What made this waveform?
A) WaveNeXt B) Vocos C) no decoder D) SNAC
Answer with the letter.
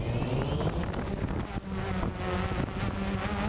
C